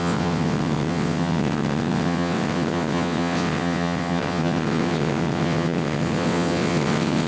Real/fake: fake